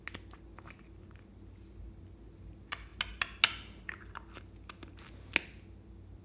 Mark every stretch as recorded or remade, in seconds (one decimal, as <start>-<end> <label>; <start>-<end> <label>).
0.0-6.2 recorded